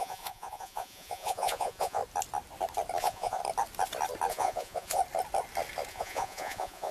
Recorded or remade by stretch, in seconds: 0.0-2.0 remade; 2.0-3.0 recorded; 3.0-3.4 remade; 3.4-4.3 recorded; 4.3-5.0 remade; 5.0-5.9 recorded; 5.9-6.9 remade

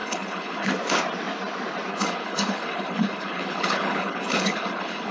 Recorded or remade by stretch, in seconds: 0.0-0.7 remade; 0.7-1.9 recorded; 1.9-5.1 remade

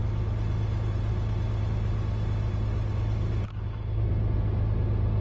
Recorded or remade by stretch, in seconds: 0.0-5.2 recorded

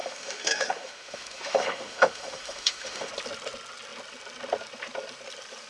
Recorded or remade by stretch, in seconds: 0.0-3.1 remade; 3.1-5.7 recorded

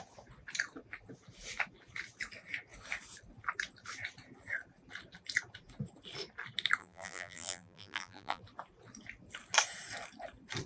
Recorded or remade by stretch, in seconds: 0.0-6.8 recorded; 6.8-8.4 remade; 8.4-10.7 recorded

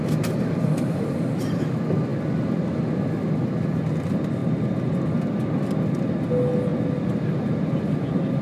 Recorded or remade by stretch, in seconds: 0.0-8.4 recorded

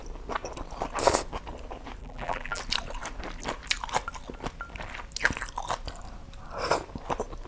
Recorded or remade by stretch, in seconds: 0.0-2.0 recorded; 2.0-2.6 remade; 2.6-7.5 recorded

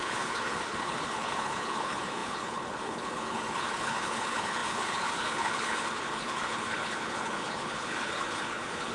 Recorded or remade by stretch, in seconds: 0.0-8.9 remade